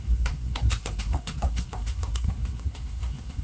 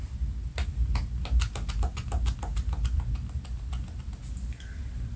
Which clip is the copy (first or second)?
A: first